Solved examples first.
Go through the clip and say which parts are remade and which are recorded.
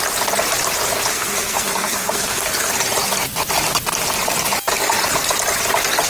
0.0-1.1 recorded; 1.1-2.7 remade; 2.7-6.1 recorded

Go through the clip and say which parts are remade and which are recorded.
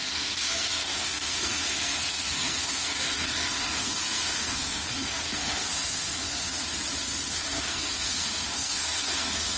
0.0-6.6 remade; 6.6-7.3 recorded; 7.3-9.6 remade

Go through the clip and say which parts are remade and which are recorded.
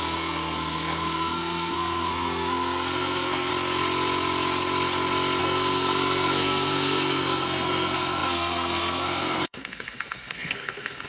0.0-3.5 remade; 3.5-5.4 recorded; 5.4-11.1 remade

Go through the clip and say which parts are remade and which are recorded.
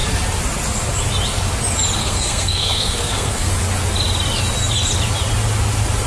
0.0-2.0 recorded; 2.0-3.5 remade; 3.5-6.1 recorded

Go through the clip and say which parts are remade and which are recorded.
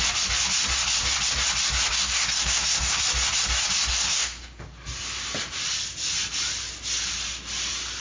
0.0-1.9 recorded; 1.9-3.0 remade; 3.0-3.9 recorded; 3.9-4.6 remade; 4.6-8.0 recorded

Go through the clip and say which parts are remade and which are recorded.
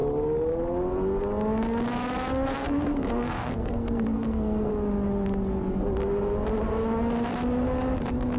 0.0-2.5 recorded; 2.5-4.7 remade; 4.7-8.4 recorded